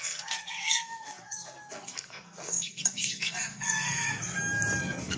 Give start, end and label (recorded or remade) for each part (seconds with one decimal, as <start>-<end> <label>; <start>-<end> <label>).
0.0-4.2 remade; 4.2-4.8 recorded; 4.8-5.2 remade